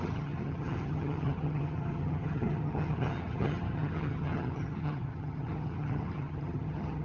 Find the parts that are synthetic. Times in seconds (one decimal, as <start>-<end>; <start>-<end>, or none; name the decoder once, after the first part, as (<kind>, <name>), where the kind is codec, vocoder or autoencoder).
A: 0.0-7.0 (vocoder, HiFi-GAN)